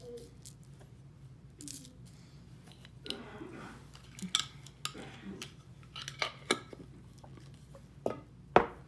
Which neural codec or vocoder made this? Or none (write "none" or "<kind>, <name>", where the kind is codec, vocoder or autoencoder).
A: none